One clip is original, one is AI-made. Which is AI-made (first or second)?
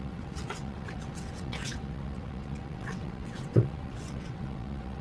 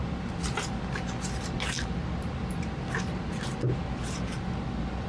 first